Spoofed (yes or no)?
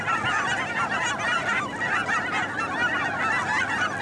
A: no